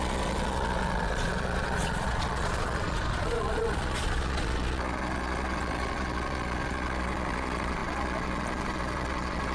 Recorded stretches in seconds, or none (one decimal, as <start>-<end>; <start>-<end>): none